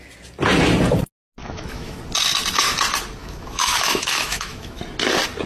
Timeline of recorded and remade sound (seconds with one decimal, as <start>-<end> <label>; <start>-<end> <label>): 0.0-1.4 recorded; 1.4-2.0 remade; 2.0-3.2 recorded; 3.2-4.8 remade; 4.8-5.5 recorded